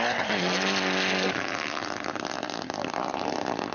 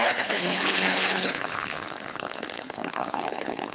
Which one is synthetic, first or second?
second